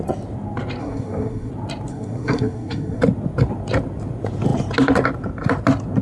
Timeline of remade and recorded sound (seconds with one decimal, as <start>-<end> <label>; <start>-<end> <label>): 0.0-0.8 recorded; 0.8-1.5 remade; 1.5-1.9 recorded; 1.9-3.0 remade; 3.0-6.0 recorded